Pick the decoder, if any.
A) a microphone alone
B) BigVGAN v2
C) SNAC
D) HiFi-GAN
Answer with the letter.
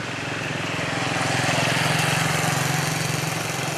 A